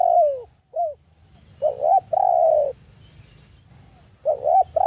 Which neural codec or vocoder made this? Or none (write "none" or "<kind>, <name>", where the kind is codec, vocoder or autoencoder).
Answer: none